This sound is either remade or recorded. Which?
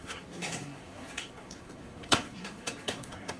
remade